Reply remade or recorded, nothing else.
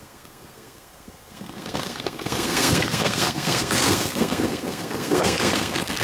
remade